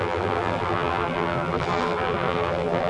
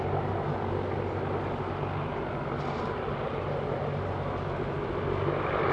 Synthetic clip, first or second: first